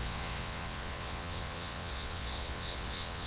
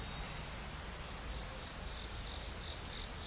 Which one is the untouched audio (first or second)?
second